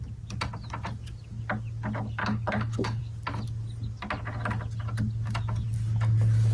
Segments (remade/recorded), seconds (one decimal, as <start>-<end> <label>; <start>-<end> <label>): 0.0-2.2 recorded; 2.2-3.0 remade; 3.0-6.5 recorded